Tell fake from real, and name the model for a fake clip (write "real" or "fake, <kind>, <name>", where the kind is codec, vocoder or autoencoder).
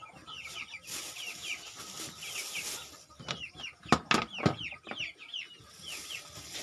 real